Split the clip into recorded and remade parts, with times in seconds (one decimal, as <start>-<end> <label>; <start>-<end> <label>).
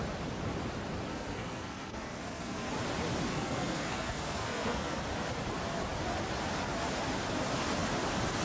0.0-1.1 recorded; 1.1-2.7 remade; 2.7-3.3 recorded; 3.3-5.0 remade; 5.0-8.4 recorded